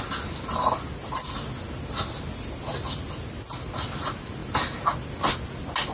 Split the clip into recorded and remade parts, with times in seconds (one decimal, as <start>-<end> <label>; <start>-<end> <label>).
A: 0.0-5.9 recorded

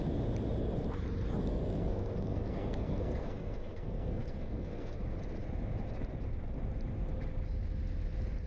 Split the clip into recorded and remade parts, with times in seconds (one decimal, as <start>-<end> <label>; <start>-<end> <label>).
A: 0.0-1.5 recorded; 1.5-5.2 remade; 5.2-8.5 recorded

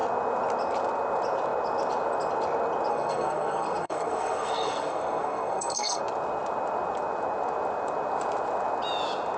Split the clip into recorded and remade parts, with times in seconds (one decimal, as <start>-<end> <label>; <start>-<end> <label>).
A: 0.0-2.9 recorded; 2.9-6.0 remade; 6.0-9.4 recorded

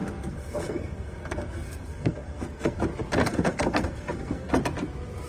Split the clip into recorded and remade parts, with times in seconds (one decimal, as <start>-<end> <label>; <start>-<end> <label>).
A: 0.0-2.8 remade; 2.8-3.2 recorded; 3.2-4.5 remade; 4.5-5.3 recorded

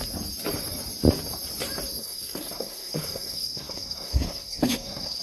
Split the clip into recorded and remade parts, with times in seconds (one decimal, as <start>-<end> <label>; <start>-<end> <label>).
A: 0.0-2.0 recorded; 2.0-5.2 remade

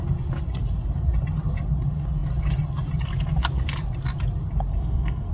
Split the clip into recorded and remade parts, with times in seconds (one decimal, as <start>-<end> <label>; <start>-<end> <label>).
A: 0.0-4.7 recorded; 4.7-5.3 remade

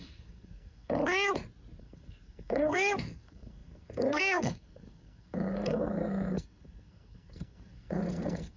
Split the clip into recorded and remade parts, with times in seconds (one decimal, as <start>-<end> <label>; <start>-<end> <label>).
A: 0.0-1.0 remade; 1.0-1.8 recorded; 1.8-8.6 remade